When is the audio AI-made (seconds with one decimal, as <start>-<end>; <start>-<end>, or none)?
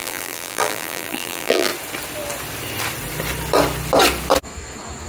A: 0.0-1.7